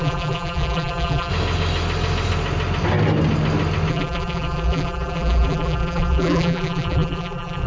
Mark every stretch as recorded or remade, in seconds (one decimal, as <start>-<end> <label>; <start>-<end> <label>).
0.0-1.3 remade; 1.3-3.9 recorded; 3.9-7.7 remade